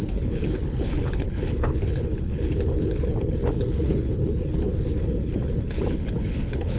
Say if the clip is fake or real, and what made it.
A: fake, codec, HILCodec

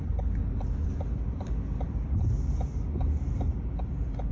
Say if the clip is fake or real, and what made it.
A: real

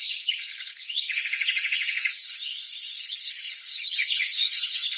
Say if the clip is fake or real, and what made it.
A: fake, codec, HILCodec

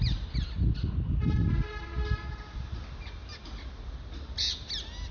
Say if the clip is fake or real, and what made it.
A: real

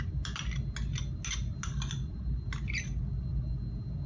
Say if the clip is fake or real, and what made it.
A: real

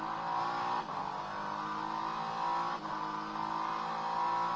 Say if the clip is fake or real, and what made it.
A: real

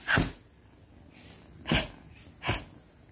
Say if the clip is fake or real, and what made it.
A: real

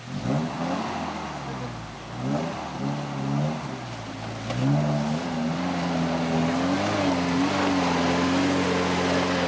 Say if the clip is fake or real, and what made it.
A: real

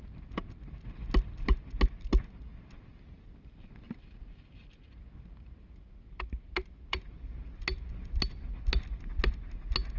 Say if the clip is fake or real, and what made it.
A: real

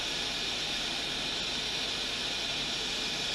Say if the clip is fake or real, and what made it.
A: real